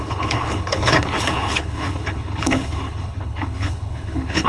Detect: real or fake fake